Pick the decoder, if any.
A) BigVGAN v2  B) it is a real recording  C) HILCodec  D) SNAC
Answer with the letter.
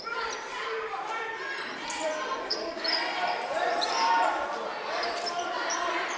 A